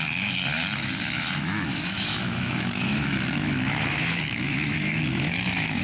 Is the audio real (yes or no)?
no